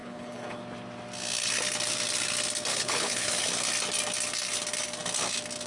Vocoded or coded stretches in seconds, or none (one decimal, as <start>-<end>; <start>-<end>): 0.0-0.6; 2.7-3.4

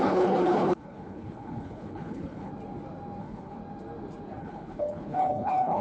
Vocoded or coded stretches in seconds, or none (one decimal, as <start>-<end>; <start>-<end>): 0.0-2.5; 3.2-3.6; 4.4-5.8

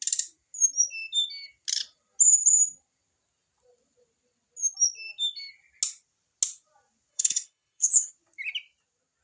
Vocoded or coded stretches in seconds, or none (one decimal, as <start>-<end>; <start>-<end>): 7.1-8.1

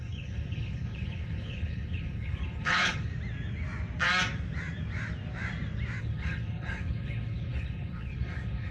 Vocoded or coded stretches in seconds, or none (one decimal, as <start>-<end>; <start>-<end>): 0.0-3.1; 6.0-8.7